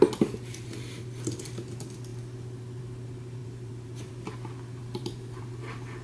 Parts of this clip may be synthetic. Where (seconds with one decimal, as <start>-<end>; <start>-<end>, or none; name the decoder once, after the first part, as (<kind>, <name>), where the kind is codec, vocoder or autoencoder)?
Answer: 3.4-4.1 (vocoder, BigVGAN v2); 4.8-5.4